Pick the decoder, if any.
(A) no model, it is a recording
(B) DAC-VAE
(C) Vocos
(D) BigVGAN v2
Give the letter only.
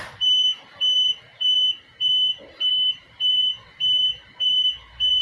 D